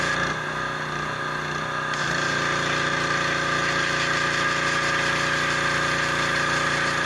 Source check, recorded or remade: recorded